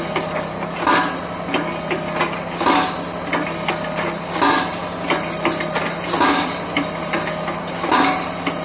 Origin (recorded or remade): recorded